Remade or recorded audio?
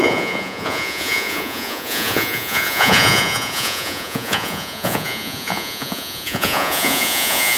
remade